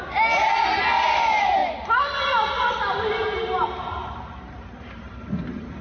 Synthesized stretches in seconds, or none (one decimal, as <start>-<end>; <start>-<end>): 0.0-1.6; 2.7-5.8